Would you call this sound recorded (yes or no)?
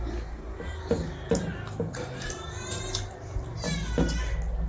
yes